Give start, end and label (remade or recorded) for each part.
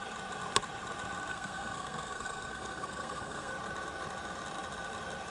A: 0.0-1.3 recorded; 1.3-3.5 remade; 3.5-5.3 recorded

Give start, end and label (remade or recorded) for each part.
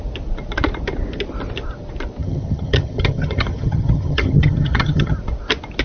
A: 0.0-2.2 recorded; 2.2-5.2 remade; 5.2-5.8 recorded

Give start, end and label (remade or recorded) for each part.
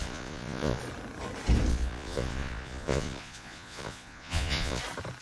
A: 0.0-0.8 remade; 0.8-1.7 recorded; 1.7-4.8 remade; 4.8-5.2 recorded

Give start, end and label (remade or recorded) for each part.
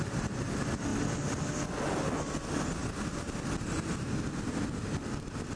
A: 0.0-5.6 recorded